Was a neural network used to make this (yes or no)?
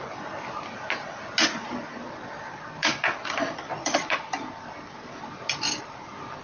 no